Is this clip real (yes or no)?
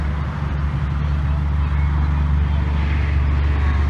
yes